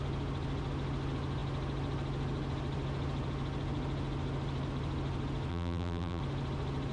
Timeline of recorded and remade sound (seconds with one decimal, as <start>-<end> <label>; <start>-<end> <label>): 0.0-5.5 recorded; 5.5-6.2 remade; 6.2-6.9 recorded